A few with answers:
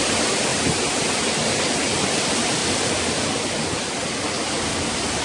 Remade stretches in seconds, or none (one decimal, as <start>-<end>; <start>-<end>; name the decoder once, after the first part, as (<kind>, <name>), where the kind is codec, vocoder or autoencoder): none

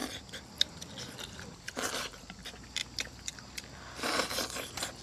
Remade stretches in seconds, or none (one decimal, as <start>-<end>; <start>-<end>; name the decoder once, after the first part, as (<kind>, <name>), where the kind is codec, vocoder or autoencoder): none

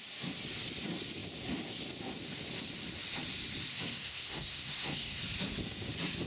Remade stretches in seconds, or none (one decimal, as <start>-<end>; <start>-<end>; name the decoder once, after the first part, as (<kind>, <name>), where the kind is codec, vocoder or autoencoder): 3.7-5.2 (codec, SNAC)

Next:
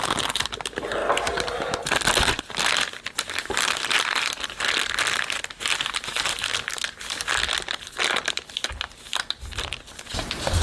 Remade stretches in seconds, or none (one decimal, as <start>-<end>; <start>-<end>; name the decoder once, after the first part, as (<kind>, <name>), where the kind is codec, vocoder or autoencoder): none